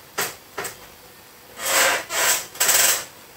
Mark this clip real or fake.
real